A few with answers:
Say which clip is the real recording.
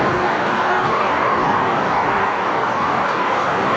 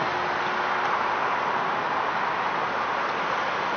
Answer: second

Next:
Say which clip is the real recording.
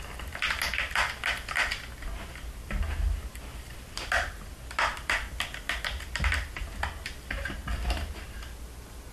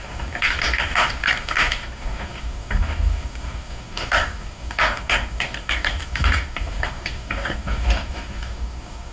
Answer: first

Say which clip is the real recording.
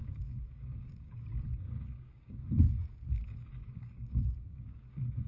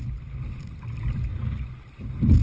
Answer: second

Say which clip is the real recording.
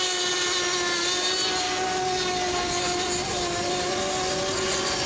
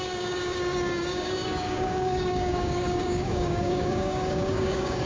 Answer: first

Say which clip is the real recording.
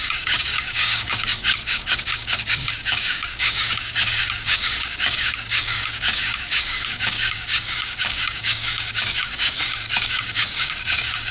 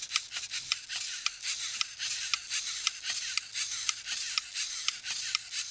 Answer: second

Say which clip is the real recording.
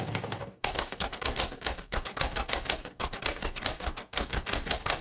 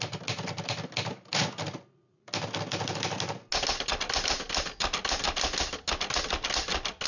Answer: second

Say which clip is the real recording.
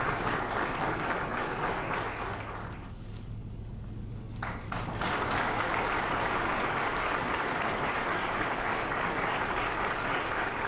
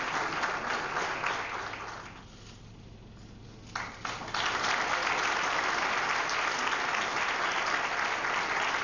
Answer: second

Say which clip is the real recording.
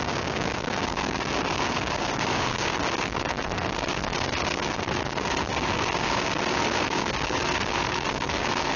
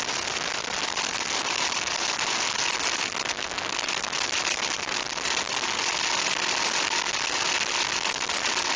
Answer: second